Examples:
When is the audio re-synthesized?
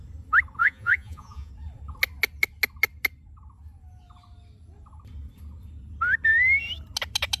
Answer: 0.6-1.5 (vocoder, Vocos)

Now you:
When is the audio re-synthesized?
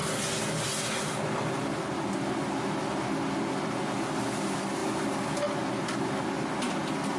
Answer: none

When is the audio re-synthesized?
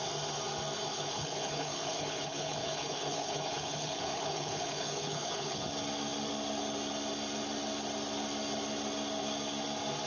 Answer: 0.9-5.6 (codec, HILCodec)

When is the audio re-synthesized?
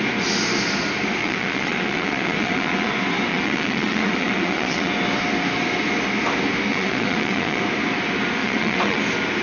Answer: 1.2-2.9 (vocoder, WaveNeXt); 3.3-4.9; 6.7-7.6; 8.4-9.0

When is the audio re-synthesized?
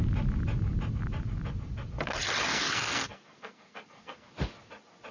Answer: 2.5-4.3 (codec, SNAC)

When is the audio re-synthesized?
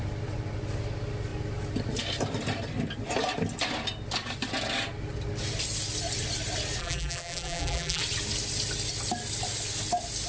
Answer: 6.8-8.0 (vocoder, BigVGAN v2)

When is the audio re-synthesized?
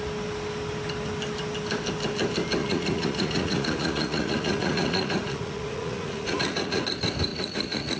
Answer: 2.6-6.8 (vocoder, Vocos); 7.3-8.0